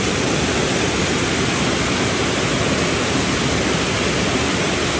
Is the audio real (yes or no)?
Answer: yes